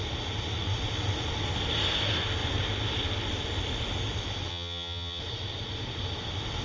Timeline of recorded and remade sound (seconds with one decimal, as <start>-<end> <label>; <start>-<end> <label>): 0.0-4.5 recorded; 4.5-5.2 remade; 5.2-6.6 recorded